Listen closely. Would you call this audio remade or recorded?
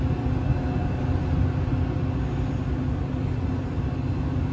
recorded